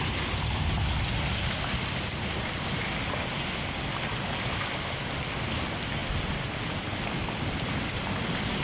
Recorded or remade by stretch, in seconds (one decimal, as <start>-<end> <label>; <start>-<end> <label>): 0.0-8.6 recorded